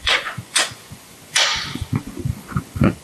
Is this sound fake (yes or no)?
yes